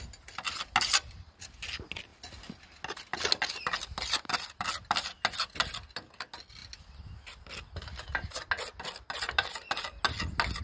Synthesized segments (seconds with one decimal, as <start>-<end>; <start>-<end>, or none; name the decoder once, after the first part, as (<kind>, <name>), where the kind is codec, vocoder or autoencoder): none